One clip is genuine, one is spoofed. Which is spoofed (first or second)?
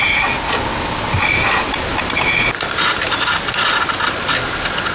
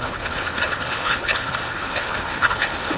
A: second